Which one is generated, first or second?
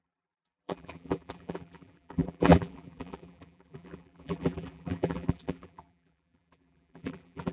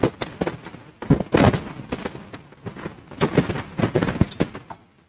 first